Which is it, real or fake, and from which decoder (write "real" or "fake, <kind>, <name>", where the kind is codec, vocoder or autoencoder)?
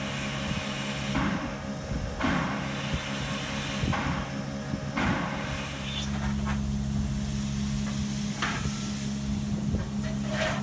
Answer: real